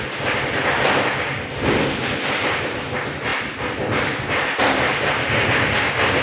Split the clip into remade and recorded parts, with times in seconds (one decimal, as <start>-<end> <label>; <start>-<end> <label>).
0.0-6.2 recorded